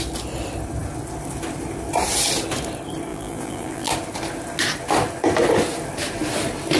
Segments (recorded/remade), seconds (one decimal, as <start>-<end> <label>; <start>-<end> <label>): 0.0-3.1 recorded; 3.1-3.9 remade; 3.9-6.8 recorded